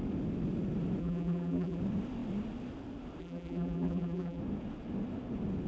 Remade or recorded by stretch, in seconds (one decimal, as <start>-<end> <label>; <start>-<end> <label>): 0.0-1.0 recorded; 1.0-1.8 remade; 1.8-3.2 recorded; 3.2-4.4 remade; 4.4-5.7 recorded